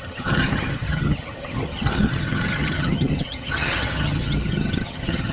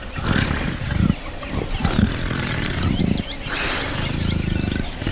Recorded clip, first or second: second